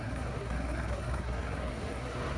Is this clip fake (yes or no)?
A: yes